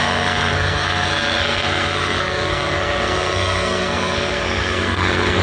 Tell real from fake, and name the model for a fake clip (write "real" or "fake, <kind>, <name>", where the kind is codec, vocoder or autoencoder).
fake, codec, SNAC